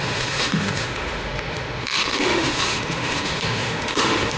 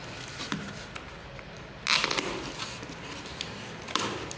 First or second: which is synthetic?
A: first